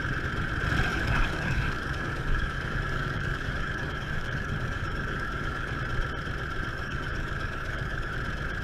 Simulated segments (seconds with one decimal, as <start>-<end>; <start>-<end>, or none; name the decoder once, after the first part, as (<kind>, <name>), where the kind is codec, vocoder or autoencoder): 0.9-5.8 (codec, DAC); 6.7-8.1